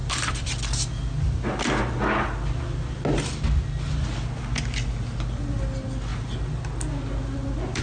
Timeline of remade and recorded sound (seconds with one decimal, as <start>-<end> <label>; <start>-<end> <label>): 0.0-0.6 remade; 0.6-7.8 recorded